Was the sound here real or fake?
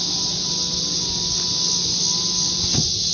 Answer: real